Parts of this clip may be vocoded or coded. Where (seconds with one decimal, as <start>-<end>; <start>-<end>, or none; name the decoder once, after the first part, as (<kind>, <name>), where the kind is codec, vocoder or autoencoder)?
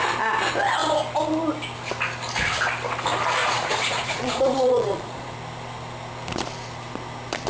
3.4-5.3 (vocoder, Vocos)